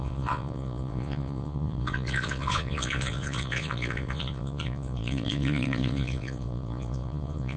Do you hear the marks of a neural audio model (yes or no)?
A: yes